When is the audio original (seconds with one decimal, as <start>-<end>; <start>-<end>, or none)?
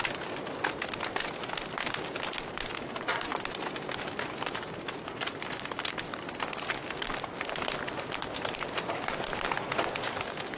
0.0-3.3; 6.7-10.6